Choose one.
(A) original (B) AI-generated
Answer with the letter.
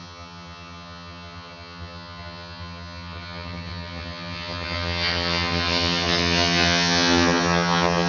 B